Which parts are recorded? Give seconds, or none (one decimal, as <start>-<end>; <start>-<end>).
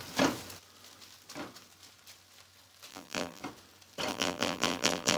0.0-2.9; 3.4-4.1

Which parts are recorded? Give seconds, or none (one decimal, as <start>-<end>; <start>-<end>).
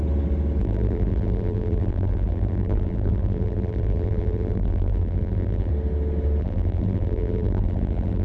0.0-0.6; 5.7-6.4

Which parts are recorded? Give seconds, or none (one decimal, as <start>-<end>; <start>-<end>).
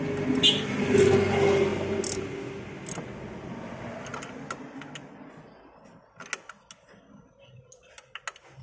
0.0-8.6